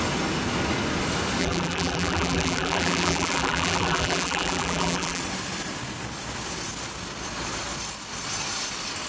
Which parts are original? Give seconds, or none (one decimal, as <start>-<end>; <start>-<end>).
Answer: 0.0-1.4; 5.2-9.1